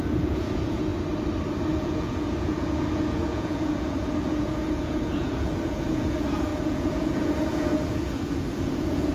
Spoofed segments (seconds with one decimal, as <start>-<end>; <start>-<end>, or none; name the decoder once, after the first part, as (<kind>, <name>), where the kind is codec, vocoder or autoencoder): 0.0-0.9 (vocoder, Vocos); 1.7-9.1